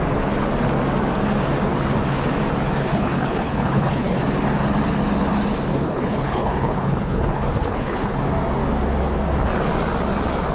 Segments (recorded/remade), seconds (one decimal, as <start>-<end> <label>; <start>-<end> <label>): 0.0-2.8 recorded; 2.8-4.2 remade; 4.2-5.7 recorded; 5.7-8.2 remade; 8.2-10.5 recorded